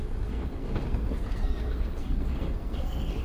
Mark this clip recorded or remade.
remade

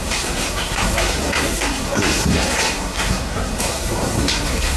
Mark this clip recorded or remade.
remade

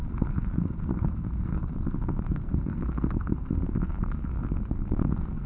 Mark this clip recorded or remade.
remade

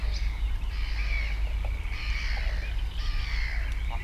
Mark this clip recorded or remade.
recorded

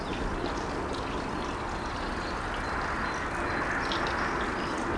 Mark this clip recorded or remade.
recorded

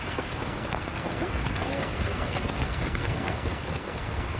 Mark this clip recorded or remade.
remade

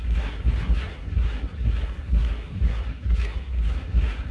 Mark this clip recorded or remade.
remade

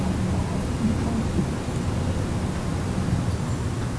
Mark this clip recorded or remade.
recorded